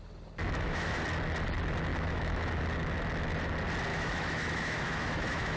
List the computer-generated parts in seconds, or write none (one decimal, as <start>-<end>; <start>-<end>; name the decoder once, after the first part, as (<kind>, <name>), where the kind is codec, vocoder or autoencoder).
0.4-1.0 (autoencoder, DAC-VAE); 1.9-2.6; 3.9-5.6